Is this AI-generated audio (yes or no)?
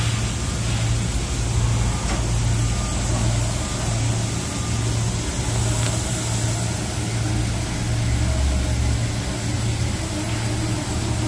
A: no